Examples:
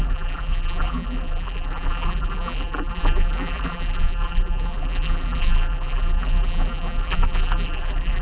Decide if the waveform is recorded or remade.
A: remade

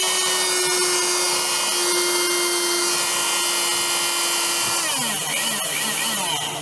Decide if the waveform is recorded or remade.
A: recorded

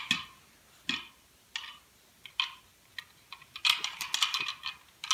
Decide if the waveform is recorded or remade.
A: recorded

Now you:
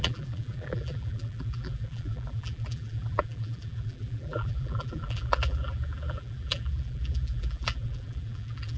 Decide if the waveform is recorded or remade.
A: remade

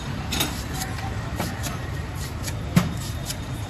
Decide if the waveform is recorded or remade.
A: remade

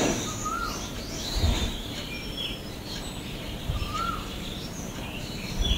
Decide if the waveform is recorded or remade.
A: remade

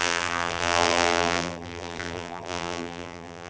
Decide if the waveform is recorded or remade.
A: remade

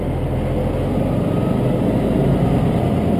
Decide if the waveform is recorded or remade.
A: recorded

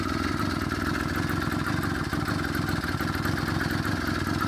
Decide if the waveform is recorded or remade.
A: recorded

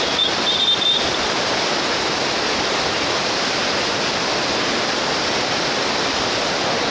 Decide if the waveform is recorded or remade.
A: recorded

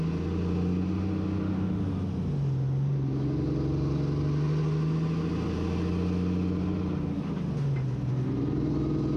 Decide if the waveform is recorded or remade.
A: recorded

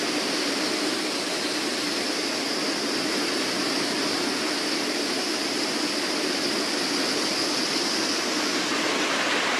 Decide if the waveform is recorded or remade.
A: recorded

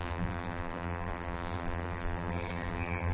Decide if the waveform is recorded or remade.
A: remade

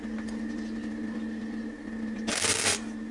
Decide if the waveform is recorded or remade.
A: recorded